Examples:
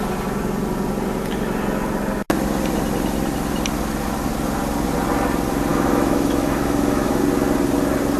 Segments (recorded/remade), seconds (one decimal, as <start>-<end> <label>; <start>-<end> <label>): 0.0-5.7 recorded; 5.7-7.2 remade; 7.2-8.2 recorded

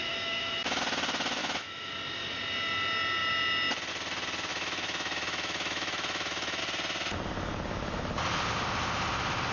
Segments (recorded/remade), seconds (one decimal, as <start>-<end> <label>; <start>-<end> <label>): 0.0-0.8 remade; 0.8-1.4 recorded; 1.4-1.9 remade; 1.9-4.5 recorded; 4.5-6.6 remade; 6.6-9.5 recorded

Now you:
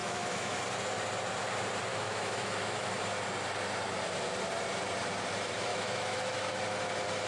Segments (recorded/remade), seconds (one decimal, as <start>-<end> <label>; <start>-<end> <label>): 0.0-0.6 remade; 0.6-1.9 recorded; 1.9-2.9 remade; 2.9-5.7 recorded; 5.7-6.4 remade; 6.4-7.3 recorded